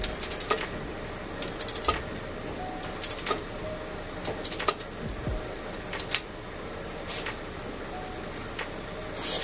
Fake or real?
real